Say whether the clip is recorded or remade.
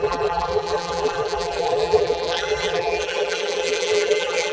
remade